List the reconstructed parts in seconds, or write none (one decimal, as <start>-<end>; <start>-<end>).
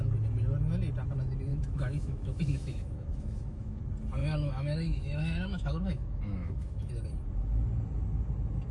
1.5-3.8; 4.2-6.9